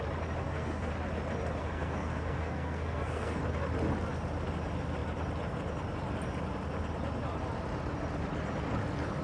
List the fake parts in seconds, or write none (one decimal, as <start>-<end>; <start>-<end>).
0.4-0.9; 1.6-3.4